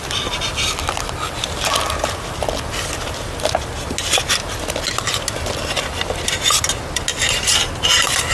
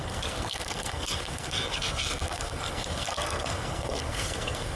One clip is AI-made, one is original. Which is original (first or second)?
first